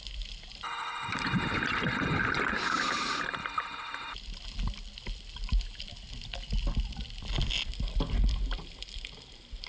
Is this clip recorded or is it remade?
recorded